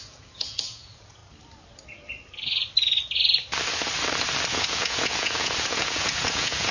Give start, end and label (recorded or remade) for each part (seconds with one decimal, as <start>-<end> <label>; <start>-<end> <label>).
0.0-1.2 remade; 1.2-4.5 recorded; 4.5-6.7 remade